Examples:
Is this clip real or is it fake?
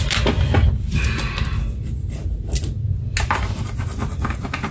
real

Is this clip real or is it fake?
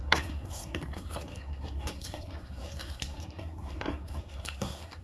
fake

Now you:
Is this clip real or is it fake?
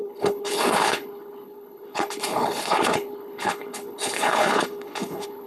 fake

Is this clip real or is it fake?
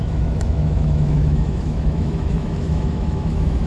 fake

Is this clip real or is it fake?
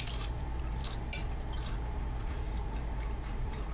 fake